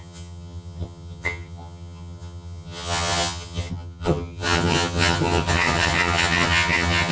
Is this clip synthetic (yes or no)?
yes